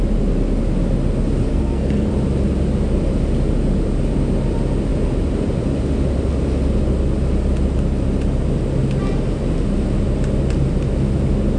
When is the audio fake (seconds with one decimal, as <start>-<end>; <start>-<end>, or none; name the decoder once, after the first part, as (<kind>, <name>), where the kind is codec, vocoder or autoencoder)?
1.5-2.1 (codec, SNAC)